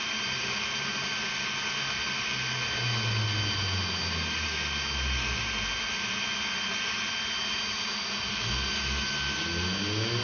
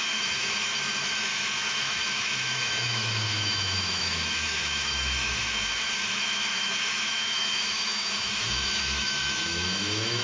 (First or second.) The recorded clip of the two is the first